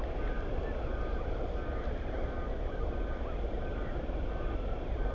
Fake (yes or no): no